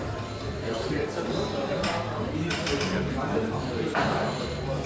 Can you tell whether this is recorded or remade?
recorded